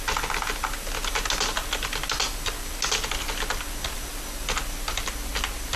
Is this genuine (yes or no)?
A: yes